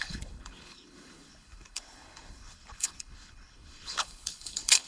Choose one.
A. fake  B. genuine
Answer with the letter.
A